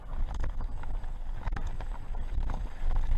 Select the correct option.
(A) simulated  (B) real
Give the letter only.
B